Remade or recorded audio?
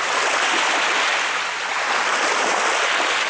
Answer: recorded